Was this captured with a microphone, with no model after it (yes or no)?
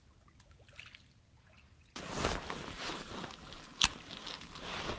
yes